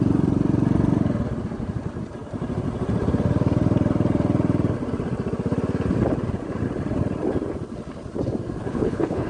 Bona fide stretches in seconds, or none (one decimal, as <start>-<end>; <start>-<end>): 0.0-8.6